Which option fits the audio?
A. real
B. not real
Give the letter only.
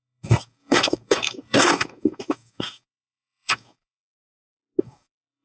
B